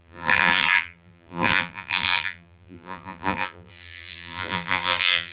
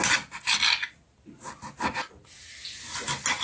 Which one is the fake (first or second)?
first